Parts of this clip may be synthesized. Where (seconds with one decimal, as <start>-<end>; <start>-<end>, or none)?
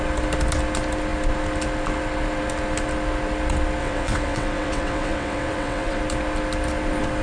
3.8-6.0